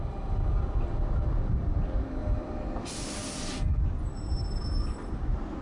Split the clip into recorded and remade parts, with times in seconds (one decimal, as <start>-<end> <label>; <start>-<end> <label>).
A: 0.0-2.2 recorded; 2.2-5.6 remade